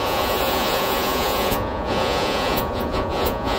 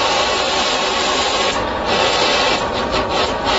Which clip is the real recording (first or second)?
second